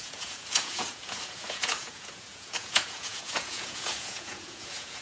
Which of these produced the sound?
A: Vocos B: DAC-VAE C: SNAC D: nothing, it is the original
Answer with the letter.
A